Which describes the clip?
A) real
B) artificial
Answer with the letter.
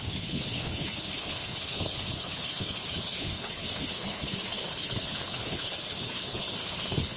B